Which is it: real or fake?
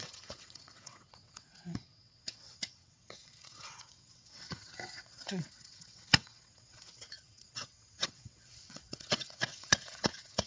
fake